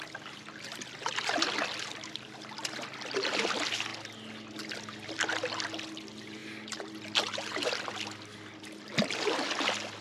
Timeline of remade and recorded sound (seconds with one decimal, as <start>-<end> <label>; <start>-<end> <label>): 0.0-10.0 recorded